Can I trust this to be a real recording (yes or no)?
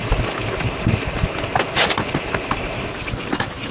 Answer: yes